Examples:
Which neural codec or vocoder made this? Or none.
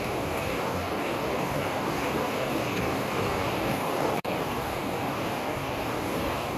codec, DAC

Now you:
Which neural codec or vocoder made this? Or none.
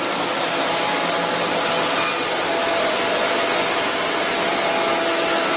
none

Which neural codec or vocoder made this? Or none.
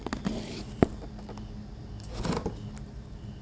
none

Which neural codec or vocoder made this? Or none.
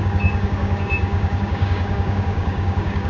codec, DAC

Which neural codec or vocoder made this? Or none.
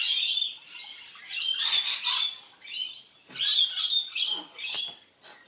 none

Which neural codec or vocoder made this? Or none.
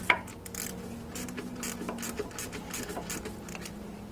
none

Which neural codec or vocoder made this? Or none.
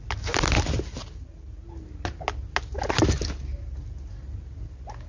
none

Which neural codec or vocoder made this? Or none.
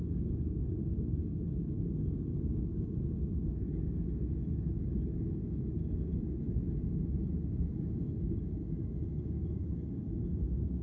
codec, DAC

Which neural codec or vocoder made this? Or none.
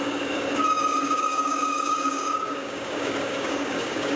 codec, DAC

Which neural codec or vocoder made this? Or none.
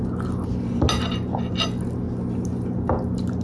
none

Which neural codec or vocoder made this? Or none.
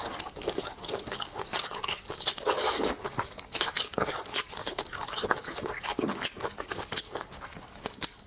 codec, DAC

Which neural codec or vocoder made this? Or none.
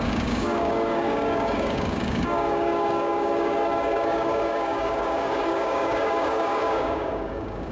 codec, DAC